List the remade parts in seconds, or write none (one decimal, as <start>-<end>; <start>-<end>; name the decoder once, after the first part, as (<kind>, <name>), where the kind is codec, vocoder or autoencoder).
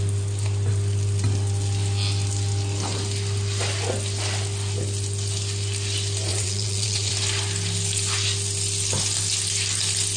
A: 6.3-7.1 (vocoder, WaveNeXt)